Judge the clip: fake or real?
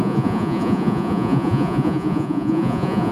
fake